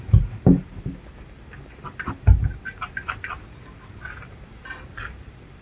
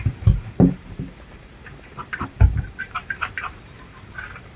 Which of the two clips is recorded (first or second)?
first